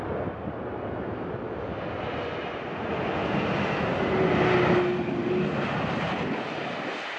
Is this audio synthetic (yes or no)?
no